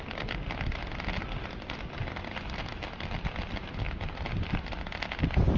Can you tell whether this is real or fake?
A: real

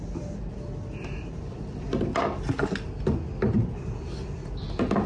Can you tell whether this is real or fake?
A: real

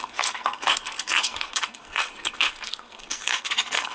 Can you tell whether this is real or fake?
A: fake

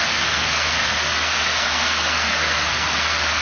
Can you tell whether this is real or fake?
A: fake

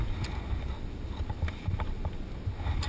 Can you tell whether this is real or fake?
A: real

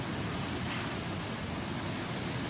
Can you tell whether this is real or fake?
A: real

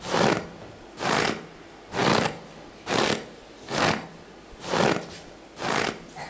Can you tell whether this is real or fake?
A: real